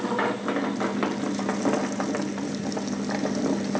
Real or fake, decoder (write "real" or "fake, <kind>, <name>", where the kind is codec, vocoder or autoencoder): real